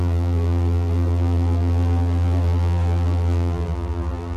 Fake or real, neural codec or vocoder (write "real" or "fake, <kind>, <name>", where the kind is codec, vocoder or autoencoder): fake, vocoder, BigVGAN v2